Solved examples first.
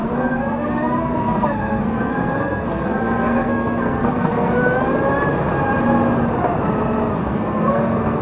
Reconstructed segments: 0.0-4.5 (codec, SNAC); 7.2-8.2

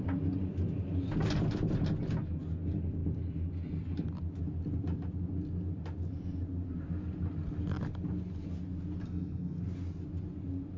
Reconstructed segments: 9.0-9.6 (codec, SNAC)

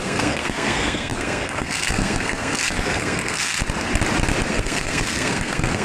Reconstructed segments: 0.0-3.5 (codec, SNAC); 4.5-5.8

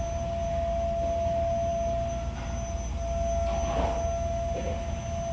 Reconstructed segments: none

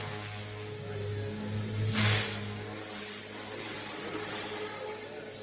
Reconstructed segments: none

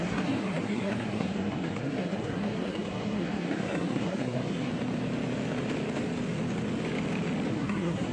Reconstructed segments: 0.0-4.7 (codec, SNAC); 7.5-8.1

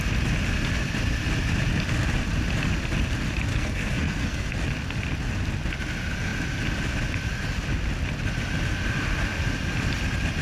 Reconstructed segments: 3.5-4.5 (codec, SNAC)